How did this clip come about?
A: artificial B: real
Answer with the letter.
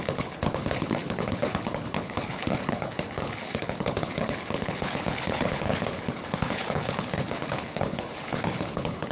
A